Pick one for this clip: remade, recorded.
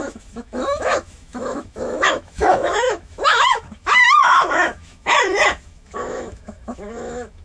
remade